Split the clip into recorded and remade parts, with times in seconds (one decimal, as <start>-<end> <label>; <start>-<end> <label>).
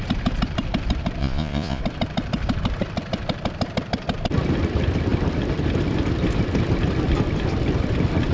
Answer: 0.0-1.2 recorded; 1.2-1.8 remade; 1.8-8.3 recorded